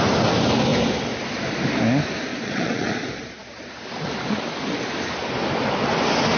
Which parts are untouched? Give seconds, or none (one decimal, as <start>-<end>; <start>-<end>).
0.0-2.3; 3.0-6.4